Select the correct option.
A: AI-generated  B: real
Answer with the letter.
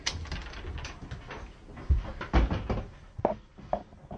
B